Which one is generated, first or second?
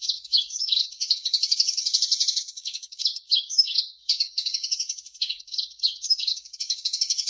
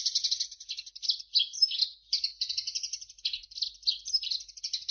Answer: first